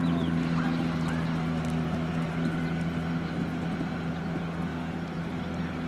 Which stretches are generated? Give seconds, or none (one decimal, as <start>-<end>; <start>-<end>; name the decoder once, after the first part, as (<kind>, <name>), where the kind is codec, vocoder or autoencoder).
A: none